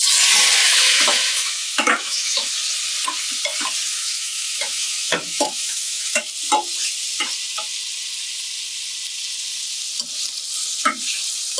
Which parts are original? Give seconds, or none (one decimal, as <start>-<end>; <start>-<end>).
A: 0.0-0.6; 2.5-3.9; 6.3-11.6